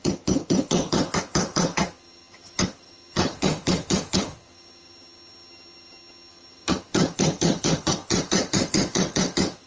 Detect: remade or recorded remade